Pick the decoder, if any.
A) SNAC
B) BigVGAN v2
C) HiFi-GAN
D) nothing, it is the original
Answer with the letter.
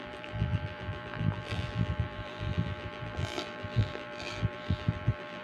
B